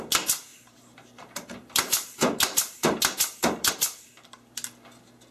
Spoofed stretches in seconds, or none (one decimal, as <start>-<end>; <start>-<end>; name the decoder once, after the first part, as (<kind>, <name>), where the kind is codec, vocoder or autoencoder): 0.5-3.7 (vocoder, BigVGAN v2)